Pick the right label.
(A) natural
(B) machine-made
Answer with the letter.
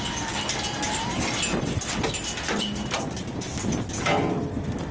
A